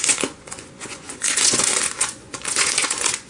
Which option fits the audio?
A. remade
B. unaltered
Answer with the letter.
A